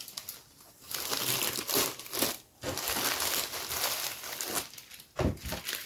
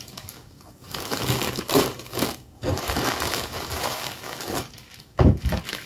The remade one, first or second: second